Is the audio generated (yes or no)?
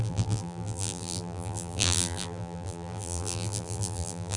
yes